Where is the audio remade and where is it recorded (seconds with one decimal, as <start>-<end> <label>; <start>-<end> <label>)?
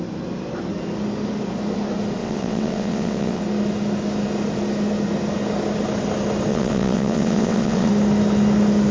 0.0-2.2 recorded; 2.2-3.4 remade; 3.4-6.5 recorded; 6.5-7.9 remade; 7.9-8.9 recorded